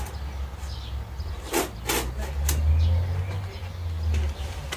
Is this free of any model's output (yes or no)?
yes